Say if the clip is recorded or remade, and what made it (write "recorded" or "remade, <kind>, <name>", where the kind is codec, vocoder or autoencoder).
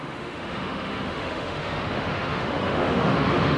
remade, autoencoder, DAC-VAE